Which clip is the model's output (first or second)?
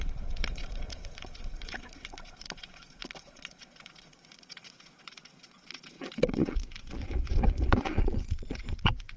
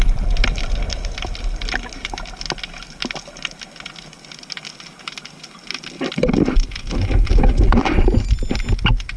first